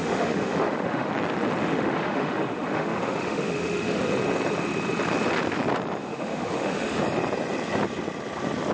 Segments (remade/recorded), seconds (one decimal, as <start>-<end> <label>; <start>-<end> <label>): 0.0-1.1 remade; 1.1-1.6 recorded; 1.6-4.0 remade; 4.0-6.0 recorded; 6.0-7.0 remade; 7.0-8.7 recorded